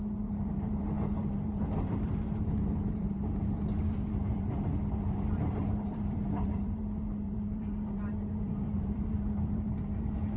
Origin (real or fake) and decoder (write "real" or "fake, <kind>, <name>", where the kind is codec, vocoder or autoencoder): fake, vocoder, BigVGAN v2